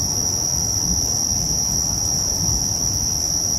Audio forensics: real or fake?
real